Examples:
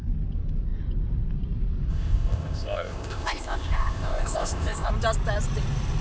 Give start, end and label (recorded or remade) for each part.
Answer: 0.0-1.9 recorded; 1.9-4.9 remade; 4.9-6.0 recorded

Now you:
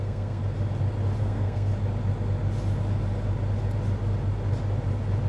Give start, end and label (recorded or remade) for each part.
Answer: 0.0-0.4 remade; 0.4-1.2 recorded; 1.2-1.7 remade; 1.7-5.3 recorded

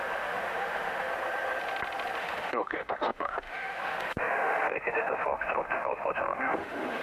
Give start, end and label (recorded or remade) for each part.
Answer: 0.0-1.1 remade; 1.1-2.2 recorded; 2.2-7.0 remade

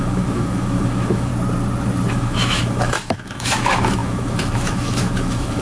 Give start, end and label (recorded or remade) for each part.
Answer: 0.0-1.3 remade; 1.3-2.1 recorded; 2.1-5.6 remade

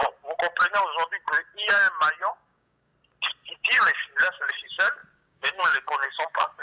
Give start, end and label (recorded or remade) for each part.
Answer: 0.0-2.3 recorded; 2.3-2.9 remade; 2.9-4.5 recorded; 4.5-6.6 remade

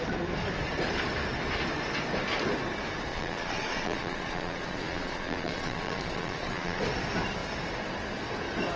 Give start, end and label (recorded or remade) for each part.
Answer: 0.0-3.1 recorded; 3.1-6.8 remade; 6.8-8.8 recorded